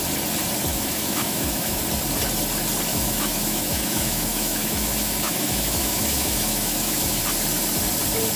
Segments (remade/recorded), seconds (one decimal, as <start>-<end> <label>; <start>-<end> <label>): 0.0-0.7 recorded; 0.7-1.8 remade; 1.8-2.9 recorded; 2.9-7.2 remade; 7.2-8.4 recorded